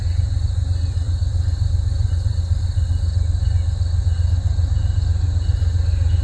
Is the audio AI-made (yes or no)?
no